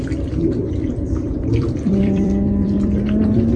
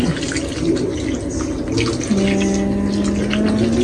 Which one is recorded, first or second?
second